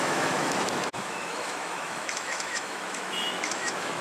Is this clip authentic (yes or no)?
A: no